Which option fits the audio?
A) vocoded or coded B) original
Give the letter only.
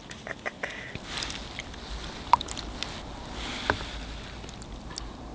B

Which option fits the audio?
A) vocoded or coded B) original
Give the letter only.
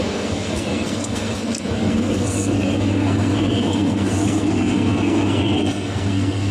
A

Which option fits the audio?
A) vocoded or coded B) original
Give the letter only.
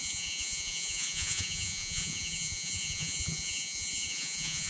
A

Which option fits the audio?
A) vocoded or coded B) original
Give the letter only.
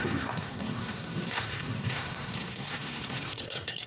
A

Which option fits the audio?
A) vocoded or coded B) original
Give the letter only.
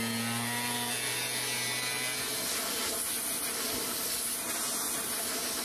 B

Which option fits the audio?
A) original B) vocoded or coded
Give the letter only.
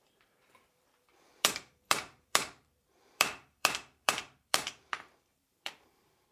B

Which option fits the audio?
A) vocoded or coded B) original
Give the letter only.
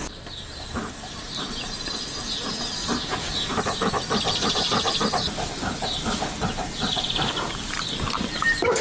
A